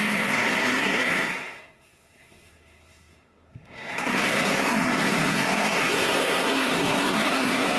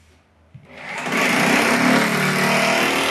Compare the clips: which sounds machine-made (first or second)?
first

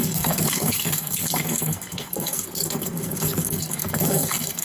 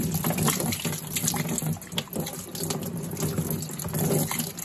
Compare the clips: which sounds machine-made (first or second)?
first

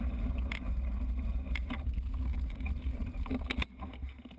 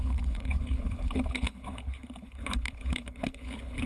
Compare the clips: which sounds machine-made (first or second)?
second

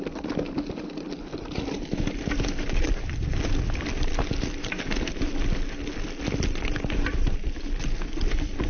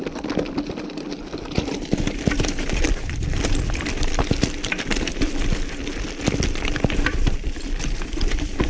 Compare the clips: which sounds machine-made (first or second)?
second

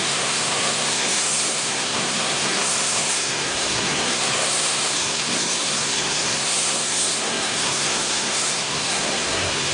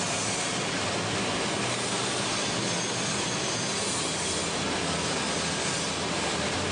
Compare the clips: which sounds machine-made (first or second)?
first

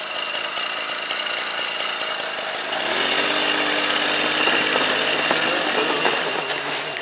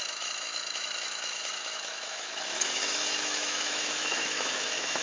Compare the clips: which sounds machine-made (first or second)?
second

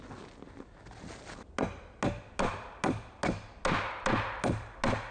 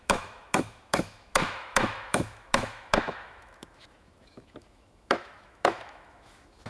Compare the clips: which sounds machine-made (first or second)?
second